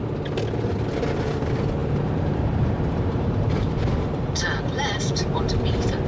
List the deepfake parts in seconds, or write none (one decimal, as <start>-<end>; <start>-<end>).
1.8-5.5